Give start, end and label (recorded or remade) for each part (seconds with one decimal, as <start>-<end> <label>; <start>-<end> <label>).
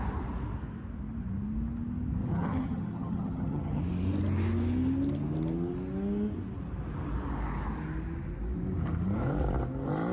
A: 0.0-2.3 recorded; 2.3-3.8 remade; 3.8-10.1 recorded